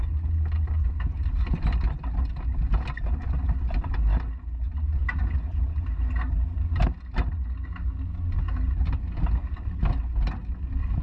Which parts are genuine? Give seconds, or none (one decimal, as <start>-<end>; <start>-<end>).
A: 0.0-11.0